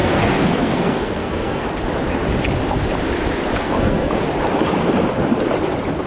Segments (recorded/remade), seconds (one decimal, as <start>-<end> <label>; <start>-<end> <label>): 0.0-1.7 remade; 1.7-3.6 recorded; 3.6-4.1 remade; 4.1-6.1 recorded